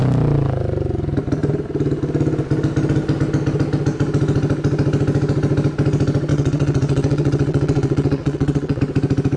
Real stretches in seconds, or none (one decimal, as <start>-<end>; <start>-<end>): 0.0-6.3; 8.8-9.4